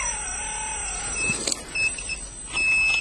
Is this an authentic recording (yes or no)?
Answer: yes